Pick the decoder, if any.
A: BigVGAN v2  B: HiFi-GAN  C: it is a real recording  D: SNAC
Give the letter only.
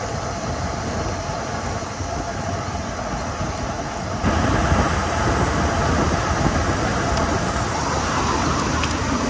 C